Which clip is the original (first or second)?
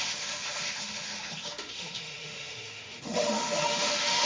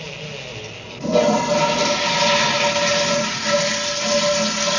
second